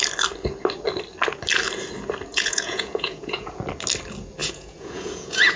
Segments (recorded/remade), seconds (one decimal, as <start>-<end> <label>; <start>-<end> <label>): 0.0-2.3 recorded; 2.3-3.6 remade; 3.6-4.4 recorded; 4.4-5.6 remade